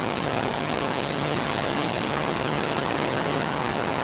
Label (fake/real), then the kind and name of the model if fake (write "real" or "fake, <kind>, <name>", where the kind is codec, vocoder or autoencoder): fake, vocoder, HiFi-GAN